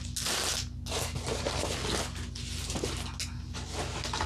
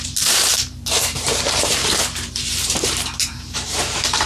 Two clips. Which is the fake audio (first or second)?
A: second